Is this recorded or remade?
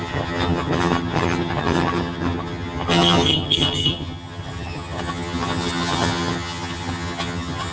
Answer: remade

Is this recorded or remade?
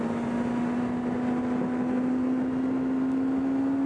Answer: recorded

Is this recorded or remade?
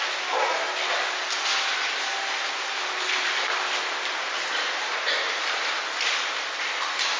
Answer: recorded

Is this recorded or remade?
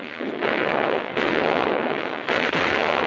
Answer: remade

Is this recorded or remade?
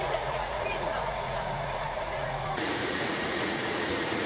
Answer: remade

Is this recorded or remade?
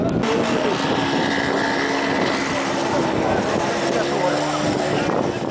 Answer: recorded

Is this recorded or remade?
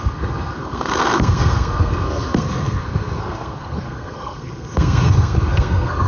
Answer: remade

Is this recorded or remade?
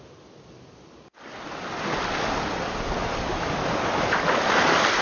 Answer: recorded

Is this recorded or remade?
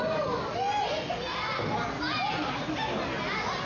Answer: recorded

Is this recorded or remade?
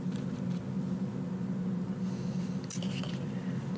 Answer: recorded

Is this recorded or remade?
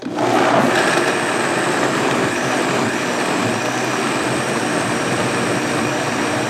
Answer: recorded